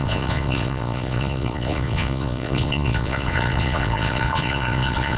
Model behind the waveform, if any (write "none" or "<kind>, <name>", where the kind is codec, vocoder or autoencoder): vocoder, Vocos